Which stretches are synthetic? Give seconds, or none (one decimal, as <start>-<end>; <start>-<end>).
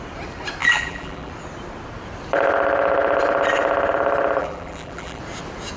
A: 0.6-1.3; 4.4-5.2